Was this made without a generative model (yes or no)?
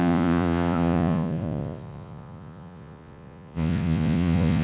no